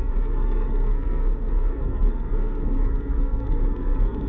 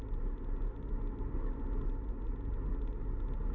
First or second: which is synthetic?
first